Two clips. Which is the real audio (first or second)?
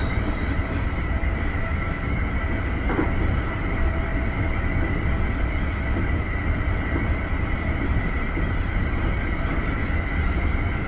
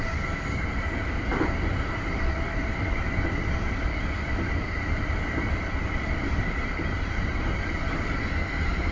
first